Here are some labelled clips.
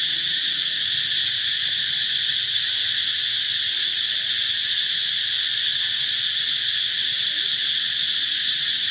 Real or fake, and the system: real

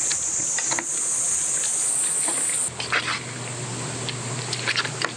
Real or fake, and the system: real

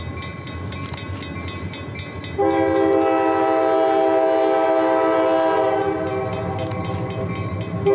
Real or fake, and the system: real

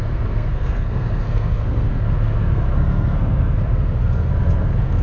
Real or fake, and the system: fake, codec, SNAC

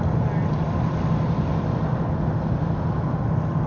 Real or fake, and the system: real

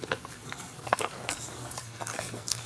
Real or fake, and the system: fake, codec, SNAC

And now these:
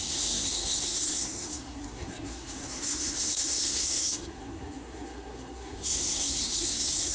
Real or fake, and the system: fake, codec, SNAC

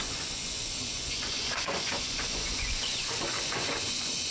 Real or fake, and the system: fake, vocoder, Vocos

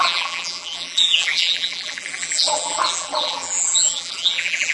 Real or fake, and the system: fake, vocoder, BigVGAN v2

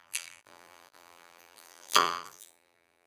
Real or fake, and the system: fake, vocoder, BigVGAN v2